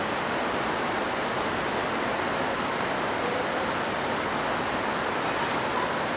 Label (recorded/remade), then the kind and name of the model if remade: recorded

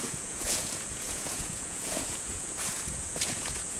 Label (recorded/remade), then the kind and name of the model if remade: remade, vocoder, Vocos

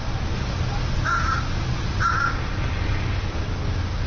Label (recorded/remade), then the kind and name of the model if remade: recorded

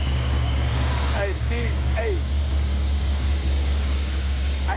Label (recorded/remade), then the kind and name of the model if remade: remade, codec, DAC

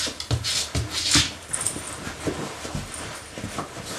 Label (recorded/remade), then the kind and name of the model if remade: recorded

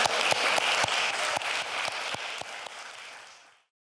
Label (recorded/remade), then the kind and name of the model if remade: recorded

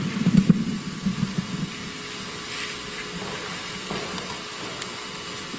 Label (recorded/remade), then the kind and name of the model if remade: recorded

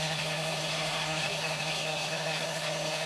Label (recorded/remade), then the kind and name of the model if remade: remade, codec, SNAC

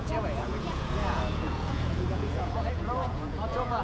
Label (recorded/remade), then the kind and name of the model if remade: remade, vocoder, Vocos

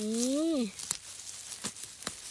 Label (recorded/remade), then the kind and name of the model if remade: recorded